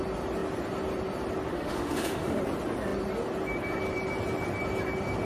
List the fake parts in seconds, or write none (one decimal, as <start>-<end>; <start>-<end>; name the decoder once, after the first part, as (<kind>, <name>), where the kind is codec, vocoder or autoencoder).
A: 1.5-2.4 (autoencoder, DAC-VAE)